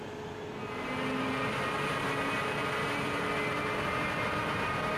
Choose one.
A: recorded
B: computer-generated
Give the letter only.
A